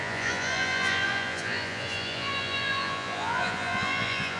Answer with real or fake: fake